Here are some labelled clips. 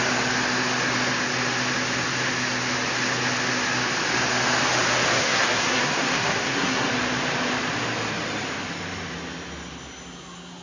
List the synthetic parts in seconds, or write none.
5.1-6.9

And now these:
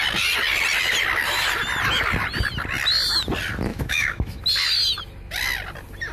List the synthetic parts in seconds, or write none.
3.7-4.4

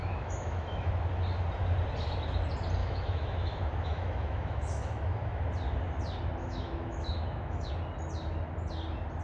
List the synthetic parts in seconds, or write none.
0.0-0.9; 2.8-5.4; 6.4-7.7

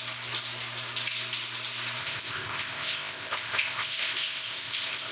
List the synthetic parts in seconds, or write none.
2.0-5.1

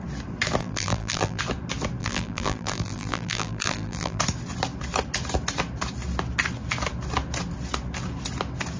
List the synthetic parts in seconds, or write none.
0.6-1.4; 2.0-4.2

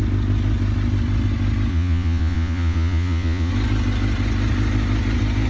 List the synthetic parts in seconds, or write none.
1.7-3.5

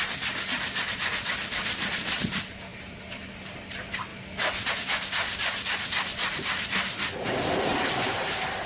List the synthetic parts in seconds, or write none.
none

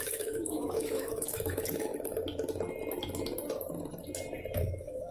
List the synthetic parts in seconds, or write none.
0.0-1.9; 4.6-5.1